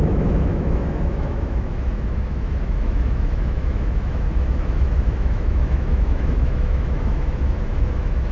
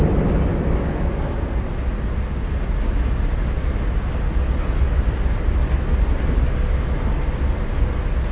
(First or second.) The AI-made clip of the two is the first